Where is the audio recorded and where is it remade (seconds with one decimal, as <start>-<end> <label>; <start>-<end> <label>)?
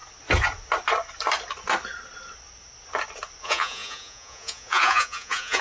0.0-3.4 recorded; 3.4-5.6 remade